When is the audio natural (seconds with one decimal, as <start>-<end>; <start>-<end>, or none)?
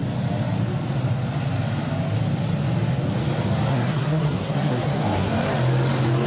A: 0.0-3.7; 5.3-6.3